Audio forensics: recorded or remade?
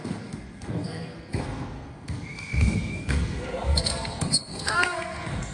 remade